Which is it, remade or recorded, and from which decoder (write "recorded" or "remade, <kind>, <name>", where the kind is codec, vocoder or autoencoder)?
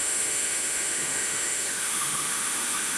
remade, autoencoder, DAC-VAE